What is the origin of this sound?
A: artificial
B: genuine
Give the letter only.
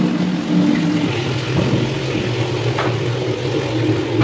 B